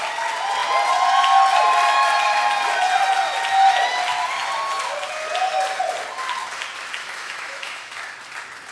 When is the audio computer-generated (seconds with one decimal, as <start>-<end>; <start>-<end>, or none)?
7.0-7.9